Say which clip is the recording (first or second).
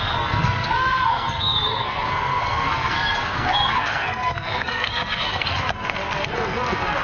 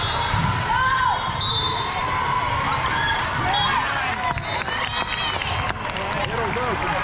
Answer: second